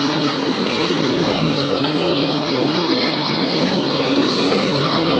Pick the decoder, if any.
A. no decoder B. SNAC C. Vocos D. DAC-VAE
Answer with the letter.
B